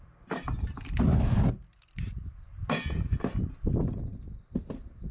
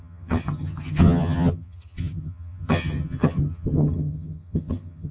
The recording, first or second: first